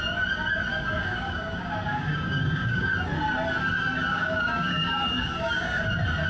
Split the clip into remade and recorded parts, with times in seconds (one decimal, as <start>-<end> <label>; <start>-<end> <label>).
0.0-0.7 recorded; 0.7-2.9 remade; 2.9-4.1 recorded; 4.1-5.8 remade; 5.8-6.3 recorded